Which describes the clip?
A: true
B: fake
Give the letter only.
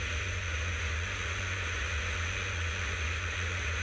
B